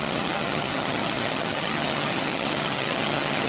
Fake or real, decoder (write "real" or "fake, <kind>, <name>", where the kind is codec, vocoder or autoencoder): fake, vocoder, HiFi-GAN